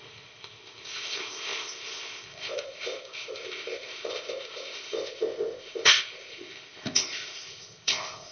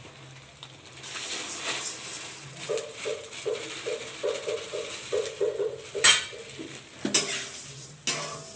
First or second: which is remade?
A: first